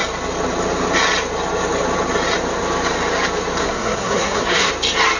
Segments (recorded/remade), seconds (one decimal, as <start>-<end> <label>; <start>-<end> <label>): 0.0-3.6 recorded; 3.6-4.7 remade; 4.7-5.2 recorded